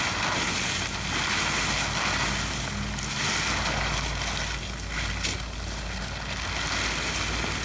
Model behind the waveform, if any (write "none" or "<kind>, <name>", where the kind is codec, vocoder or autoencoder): none